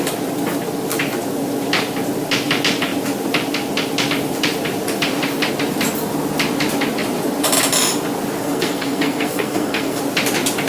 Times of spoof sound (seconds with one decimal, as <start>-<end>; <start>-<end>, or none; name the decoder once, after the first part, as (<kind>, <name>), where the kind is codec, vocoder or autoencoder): 8.4-10.0 (codec, SNAC)